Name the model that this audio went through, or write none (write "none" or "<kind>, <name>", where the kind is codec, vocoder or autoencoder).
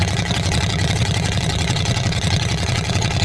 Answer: vocoder, WaveNeXt